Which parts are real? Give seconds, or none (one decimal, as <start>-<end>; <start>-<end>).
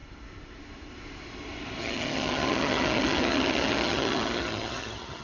0.0-1.8